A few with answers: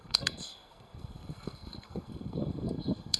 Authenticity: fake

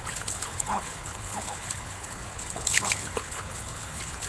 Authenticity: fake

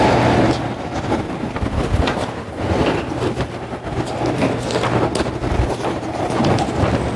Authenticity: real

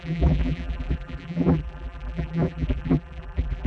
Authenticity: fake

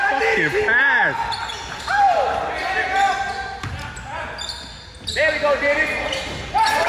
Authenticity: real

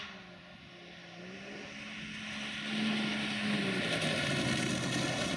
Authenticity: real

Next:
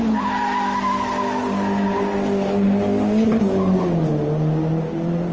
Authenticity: real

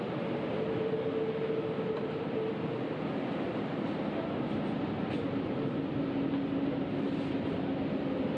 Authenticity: real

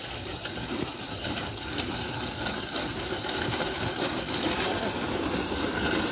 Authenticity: real